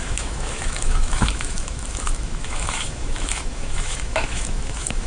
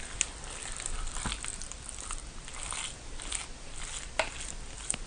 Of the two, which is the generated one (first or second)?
first